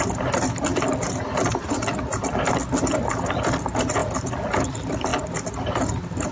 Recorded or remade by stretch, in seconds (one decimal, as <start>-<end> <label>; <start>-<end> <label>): 0.0-6.3 recorded